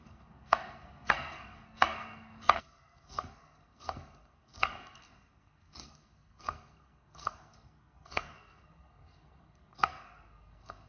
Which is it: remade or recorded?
remade